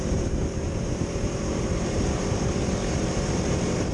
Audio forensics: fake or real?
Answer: fake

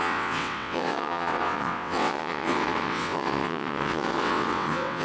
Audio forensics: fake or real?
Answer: fake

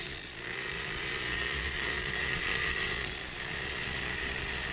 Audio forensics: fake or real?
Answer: fake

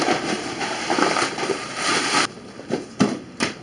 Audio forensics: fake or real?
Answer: fake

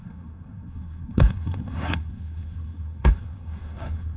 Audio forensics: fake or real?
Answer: fake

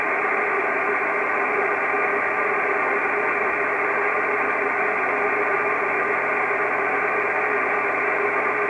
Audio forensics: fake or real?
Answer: real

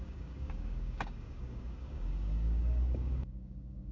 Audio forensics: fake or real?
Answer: fake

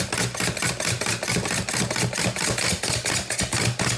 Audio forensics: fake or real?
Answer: real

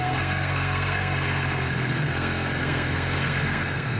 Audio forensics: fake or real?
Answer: fake